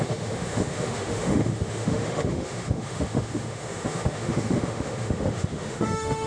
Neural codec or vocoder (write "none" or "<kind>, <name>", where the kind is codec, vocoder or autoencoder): autoencoder, DAC-VAE